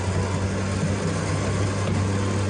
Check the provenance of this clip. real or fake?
real